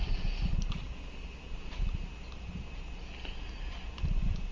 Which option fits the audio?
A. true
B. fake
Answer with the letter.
A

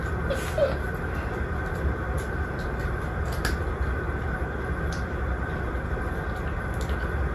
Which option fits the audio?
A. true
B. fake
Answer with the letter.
A